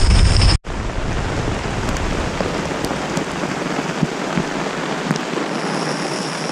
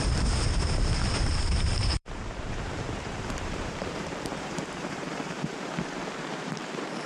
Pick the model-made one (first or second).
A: second